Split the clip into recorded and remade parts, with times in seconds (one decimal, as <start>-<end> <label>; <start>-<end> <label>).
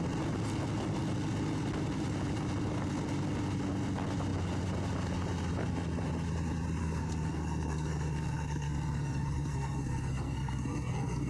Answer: 0.0-6.8 recorded; 6.8-11.3 remade